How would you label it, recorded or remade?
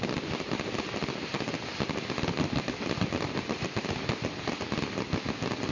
recorded